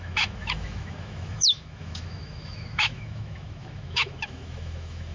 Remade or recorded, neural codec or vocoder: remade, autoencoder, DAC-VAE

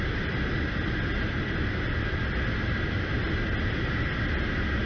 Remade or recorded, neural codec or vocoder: recorded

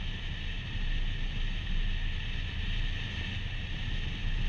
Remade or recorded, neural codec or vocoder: recorded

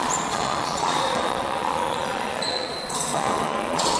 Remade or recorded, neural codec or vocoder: remade, vocoder, Vocos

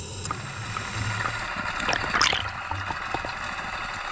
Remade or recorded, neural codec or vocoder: recorded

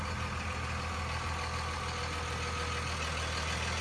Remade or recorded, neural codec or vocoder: recorded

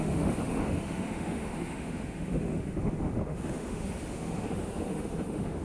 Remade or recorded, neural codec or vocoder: remade, autoencoder, DAC-VAE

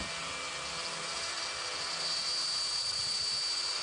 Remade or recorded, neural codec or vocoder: recorded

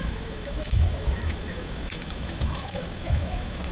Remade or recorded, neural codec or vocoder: remade, autoencoder, DAC-VAE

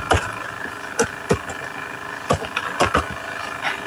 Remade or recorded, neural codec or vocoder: recorded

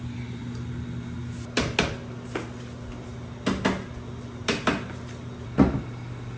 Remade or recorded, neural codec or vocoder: recorded